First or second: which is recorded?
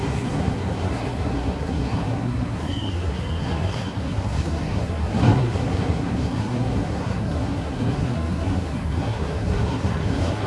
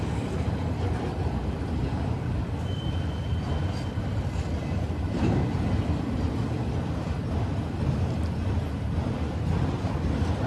second